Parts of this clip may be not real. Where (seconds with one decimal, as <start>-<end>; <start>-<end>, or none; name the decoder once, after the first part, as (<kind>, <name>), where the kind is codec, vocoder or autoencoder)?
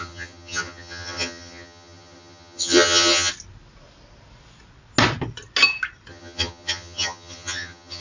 0.0-3.3 (vocoder, HiFi-GAN); 6.1-8.0